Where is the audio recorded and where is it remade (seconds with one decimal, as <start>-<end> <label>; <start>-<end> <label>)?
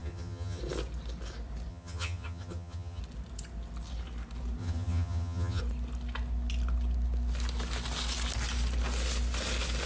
0.0-0.6 remade; 0.6-1.7 recorded; 1.7-3.0 remade; 3.0-4.6 recorded; 4.6-5.6 remade; 5.6-9.9 recorded